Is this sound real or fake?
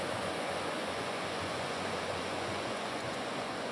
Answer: fake